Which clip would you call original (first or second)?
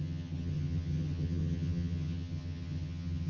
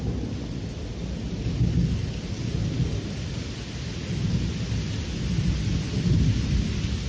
second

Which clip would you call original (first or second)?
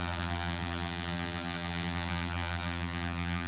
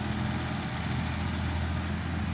second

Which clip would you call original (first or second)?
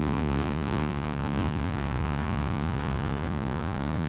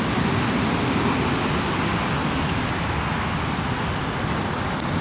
second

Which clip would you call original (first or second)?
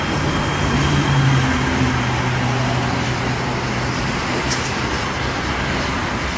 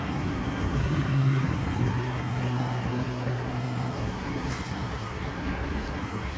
first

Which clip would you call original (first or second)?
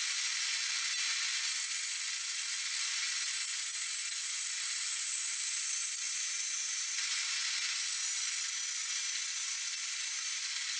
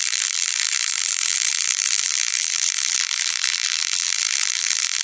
first